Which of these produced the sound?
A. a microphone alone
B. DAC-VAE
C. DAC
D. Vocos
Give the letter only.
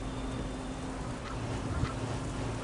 A